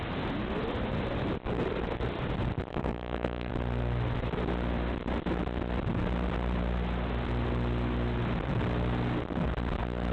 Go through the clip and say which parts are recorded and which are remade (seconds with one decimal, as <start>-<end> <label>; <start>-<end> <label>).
0.0-2.7 recorded; 2.7-3.5 remade; 3.5-10.1 recorded